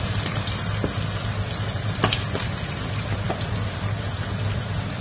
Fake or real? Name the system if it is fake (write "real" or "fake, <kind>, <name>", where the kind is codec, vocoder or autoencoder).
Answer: real